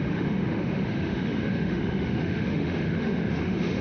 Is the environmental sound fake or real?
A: fake